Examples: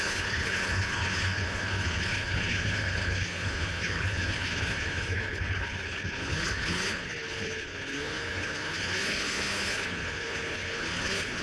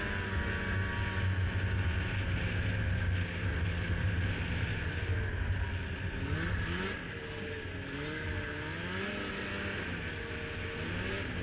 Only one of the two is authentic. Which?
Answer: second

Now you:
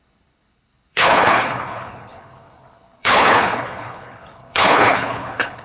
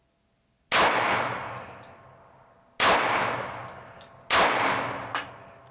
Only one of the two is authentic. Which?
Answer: second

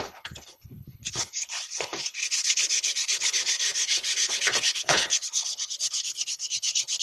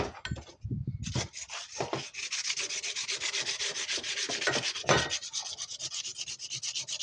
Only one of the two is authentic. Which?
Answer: second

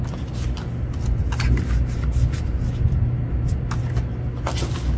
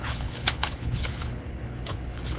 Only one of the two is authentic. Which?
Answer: first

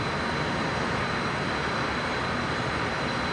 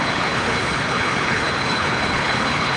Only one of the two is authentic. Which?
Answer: first